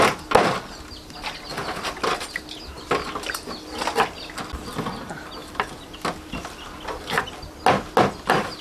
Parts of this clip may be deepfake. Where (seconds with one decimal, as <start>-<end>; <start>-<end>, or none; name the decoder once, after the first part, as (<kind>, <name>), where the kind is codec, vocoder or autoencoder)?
none